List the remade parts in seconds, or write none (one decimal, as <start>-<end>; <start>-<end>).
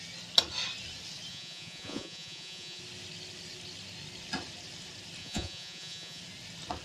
1.3-2.8; 5.2-6.2